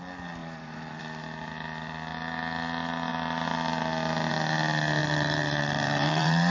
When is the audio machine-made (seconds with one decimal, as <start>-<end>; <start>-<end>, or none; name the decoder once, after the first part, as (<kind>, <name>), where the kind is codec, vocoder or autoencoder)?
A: 0.4-1.0 (vocoder, BigVGAN v2); 5.0-6.5